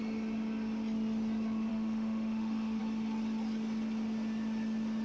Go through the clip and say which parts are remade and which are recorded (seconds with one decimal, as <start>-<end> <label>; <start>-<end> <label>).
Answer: 0.0-1.7 recorded; 1.7-2.8 remade; 2.8-5.0 recorded